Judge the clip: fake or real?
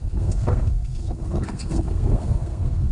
fake